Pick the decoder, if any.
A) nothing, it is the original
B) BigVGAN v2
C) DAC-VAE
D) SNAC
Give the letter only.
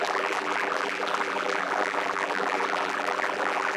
B